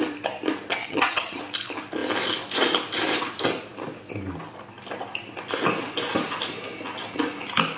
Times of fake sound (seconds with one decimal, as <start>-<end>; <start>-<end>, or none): 0.8-1.4